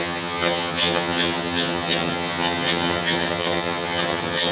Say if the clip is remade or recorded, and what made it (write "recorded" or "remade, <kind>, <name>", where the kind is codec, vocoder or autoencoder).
remade, vocoder, HiFi-GAN